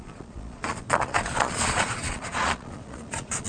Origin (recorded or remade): remade